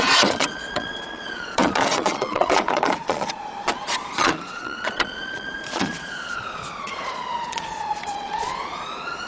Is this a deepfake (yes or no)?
yes